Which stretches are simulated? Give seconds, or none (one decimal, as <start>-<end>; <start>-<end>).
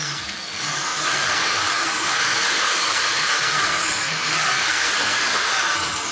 0.0-6.1